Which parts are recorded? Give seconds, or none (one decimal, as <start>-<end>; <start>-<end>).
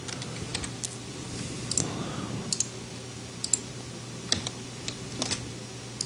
0.0-6.1